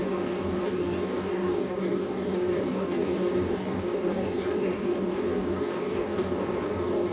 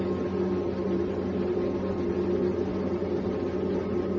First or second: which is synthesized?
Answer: first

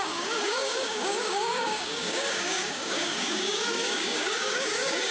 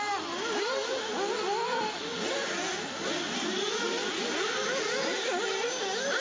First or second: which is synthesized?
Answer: first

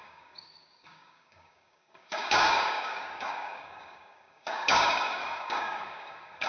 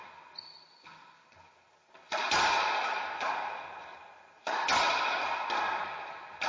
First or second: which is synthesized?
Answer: first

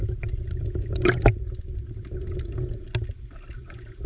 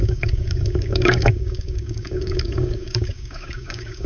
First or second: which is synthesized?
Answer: second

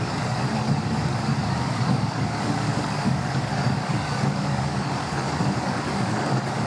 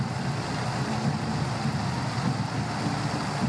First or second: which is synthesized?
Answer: first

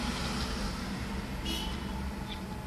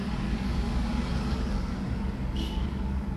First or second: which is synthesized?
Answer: second